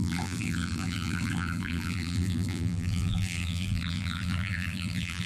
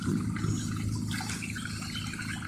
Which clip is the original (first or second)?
second